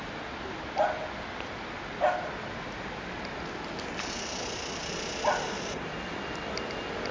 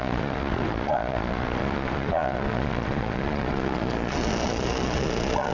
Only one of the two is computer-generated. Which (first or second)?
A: second